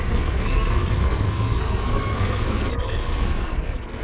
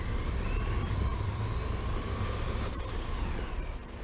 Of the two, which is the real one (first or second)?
second